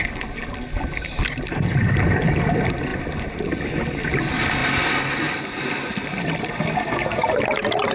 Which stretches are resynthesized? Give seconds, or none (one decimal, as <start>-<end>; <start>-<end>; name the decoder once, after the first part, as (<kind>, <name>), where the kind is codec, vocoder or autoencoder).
none